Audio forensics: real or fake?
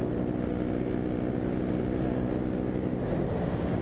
real